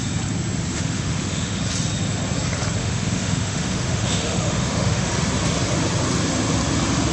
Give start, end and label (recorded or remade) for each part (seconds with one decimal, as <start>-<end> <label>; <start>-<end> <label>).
0.0-0.7 recorded; 0.7-1.6 remade; 1.6-2.8 recorded; 2.8-5.1 remade; 5.1-7.1 recorded